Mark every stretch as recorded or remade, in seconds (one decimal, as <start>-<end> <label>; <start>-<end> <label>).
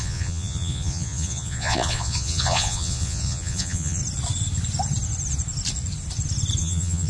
0.0-4.0 remade; 4.0-6.6 recorded; 6.6-7.1 remade